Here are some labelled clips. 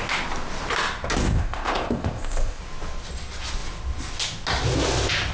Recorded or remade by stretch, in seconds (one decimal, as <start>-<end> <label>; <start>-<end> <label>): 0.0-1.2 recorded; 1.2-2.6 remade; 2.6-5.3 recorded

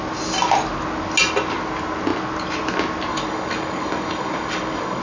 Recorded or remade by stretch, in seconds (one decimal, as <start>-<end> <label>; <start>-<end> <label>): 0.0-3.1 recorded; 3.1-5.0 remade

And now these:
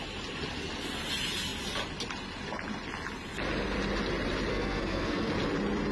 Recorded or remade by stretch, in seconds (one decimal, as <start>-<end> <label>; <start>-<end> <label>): 0.0-4.5 recorded; 4.5-5.3 remade; 5.3-5.9 recorded

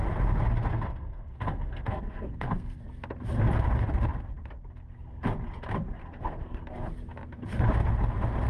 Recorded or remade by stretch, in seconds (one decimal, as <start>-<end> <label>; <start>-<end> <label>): 0.0-0.7 recorded; 0.7-2.8 remade; 2.8-6.0 recorded; 6.0-6.6 remade; 6.6-8.5 recorded

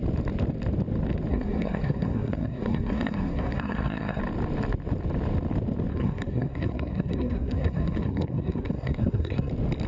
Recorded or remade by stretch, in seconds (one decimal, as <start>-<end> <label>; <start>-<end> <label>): 0.0-1.3 recorded; 1.3-4.2 remade; 4.2-5.9 recorded; 5.9-9.5 remade; 9.5-9.9 recorded

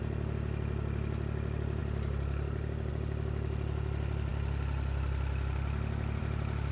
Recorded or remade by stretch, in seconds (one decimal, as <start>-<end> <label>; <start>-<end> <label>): 0.0-6.7 recorded